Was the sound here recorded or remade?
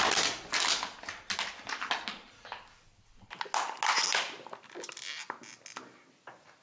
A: recorded